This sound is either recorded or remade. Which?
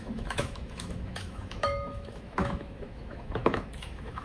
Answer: remade